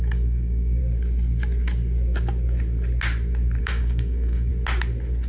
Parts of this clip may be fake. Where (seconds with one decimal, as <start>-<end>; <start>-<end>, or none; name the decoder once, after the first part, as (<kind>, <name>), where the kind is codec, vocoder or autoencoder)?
0.0-0.8 (codec, DAC); 3.6-4.5